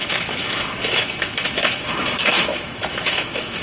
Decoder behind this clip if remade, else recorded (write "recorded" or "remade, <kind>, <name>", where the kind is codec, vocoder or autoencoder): remade, autoencoder, DAC-VAE